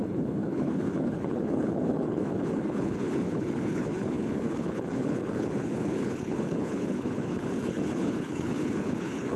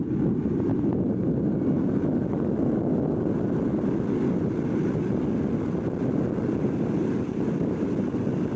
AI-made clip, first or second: first